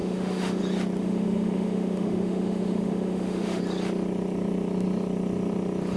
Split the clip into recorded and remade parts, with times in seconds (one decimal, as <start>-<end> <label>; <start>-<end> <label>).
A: 0.0-0.6 remade; 0.6-1.0 recorded; 1.0-3.6 remade; 3.6-6.0 recorded